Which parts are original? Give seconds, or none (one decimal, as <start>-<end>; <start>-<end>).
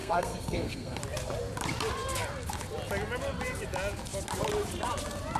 1.0-5.4